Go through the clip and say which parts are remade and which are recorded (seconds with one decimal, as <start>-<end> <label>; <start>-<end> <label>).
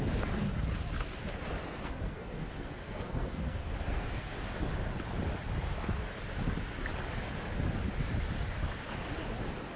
0.0-1.6 recorded; 1.6-4.3 remade; 4.3-9.8 recorded